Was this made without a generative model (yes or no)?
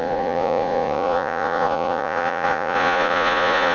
no